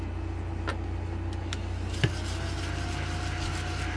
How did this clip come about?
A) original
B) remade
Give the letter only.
A